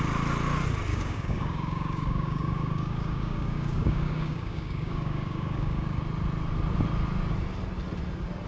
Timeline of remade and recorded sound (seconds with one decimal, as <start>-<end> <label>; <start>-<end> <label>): 0.0-0.9 recorded; 0.9-6.0 remade; 6.0-8.5 recorded